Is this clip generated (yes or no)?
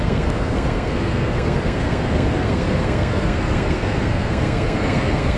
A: yes